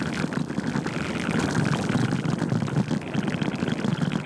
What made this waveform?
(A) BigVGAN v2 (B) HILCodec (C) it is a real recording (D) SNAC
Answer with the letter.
C